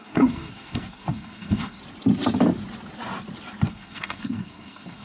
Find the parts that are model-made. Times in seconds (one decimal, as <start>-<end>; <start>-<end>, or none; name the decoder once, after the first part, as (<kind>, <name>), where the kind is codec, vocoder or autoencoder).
0.0-1.8 (codec, SNAC); 3.7-5.0